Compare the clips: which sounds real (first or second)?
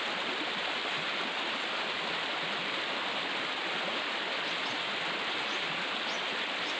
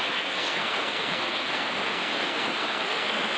first